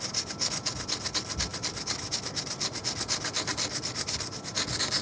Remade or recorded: recorded